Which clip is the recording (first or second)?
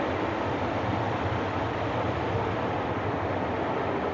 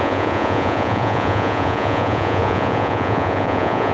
first